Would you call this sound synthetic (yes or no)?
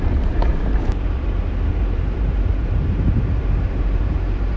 yes